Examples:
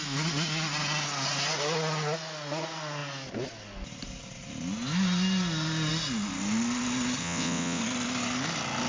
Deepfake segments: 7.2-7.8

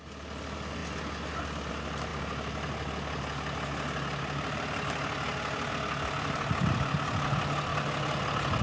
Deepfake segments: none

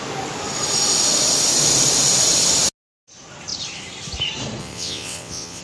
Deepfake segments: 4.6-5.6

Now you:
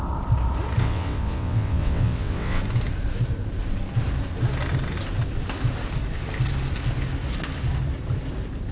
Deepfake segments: 0.8-2.6

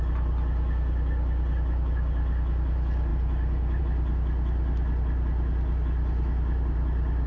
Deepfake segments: none

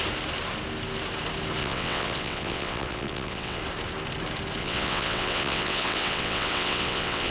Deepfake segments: 1.6-3.6; 4.6-7.3

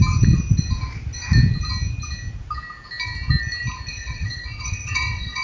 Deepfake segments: 3.9-5.4